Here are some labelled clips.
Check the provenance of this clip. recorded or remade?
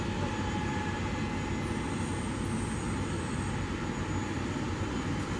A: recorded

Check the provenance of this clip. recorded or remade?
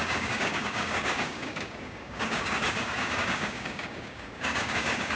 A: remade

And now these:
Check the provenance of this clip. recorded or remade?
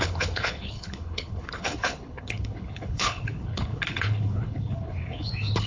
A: remade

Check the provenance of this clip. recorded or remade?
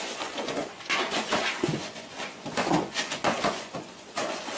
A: remade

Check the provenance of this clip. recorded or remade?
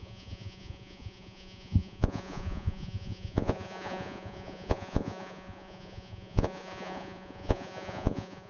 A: remade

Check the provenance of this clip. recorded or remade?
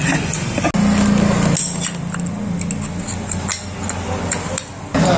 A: recorded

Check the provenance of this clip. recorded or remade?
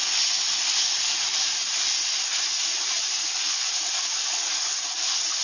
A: recorded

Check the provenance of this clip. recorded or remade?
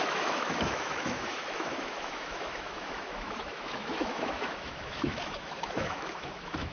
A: remade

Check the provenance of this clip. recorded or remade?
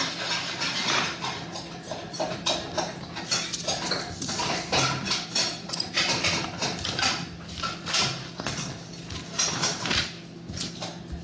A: recorded